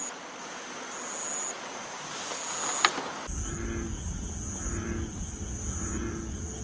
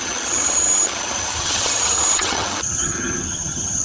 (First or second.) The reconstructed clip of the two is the second